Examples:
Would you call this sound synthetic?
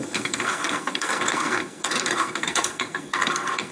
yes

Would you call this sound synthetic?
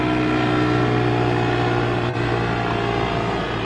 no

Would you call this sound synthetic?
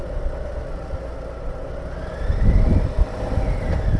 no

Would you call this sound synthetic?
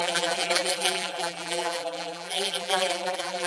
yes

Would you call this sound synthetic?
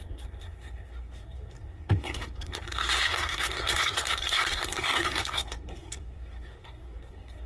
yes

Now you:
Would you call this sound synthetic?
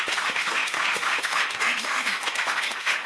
yes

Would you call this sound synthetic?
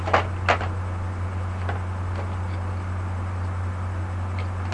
no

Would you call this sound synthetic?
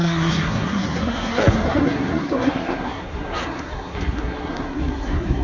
yes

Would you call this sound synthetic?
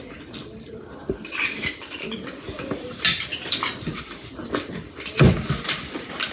yes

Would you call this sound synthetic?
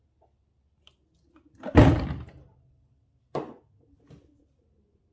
yes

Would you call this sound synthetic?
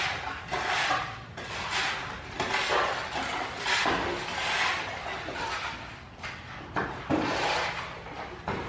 no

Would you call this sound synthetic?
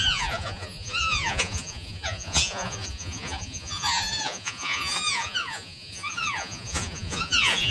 yes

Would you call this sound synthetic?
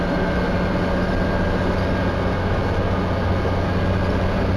no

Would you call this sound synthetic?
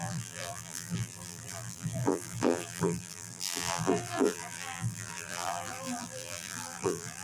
yes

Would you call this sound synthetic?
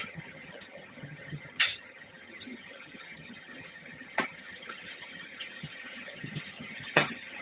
yes